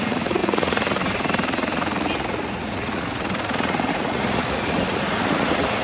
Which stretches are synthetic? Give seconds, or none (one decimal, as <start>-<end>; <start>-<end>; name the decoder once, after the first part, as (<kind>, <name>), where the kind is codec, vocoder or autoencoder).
0.0-5.8 (vocoder, Vocos)